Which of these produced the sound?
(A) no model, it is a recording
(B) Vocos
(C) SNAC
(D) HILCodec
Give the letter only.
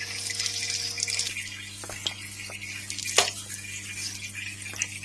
A